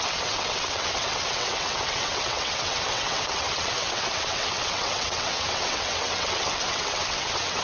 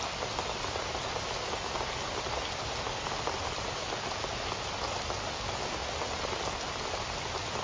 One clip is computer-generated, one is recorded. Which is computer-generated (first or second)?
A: first